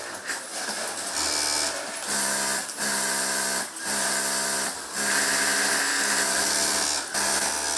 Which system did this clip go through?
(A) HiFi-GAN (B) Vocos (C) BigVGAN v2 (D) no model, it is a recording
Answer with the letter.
D